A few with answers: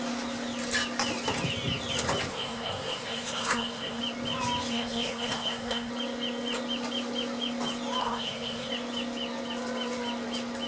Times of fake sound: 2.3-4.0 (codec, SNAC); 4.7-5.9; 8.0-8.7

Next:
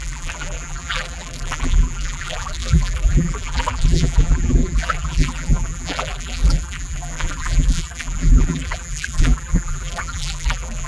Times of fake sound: 0.0-10.9 (vocoder, BigVGAN v2)

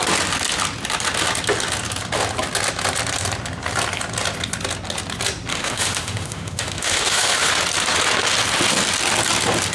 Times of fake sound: 5.5-7.5 (autoencoder, DAC-VAE)

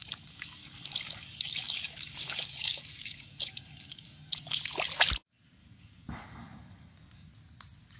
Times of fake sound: 0.0-4.7 (codec, DAC); 5.6-7.3

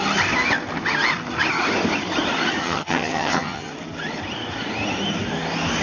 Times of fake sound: 2.6-3.7 (vocoder, HiFi-GAN)